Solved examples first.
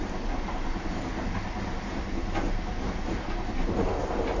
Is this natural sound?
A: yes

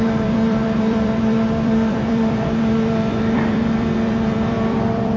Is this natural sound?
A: no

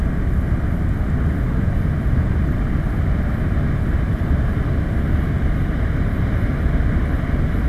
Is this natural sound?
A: yes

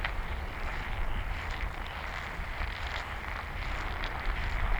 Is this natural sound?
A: no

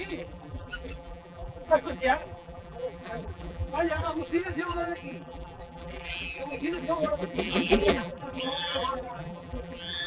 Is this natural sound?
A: no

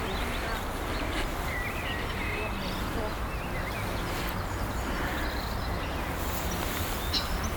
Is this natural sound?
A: yes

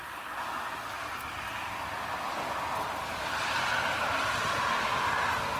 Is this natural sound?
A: yes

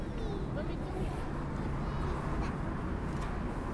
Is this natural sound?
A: yes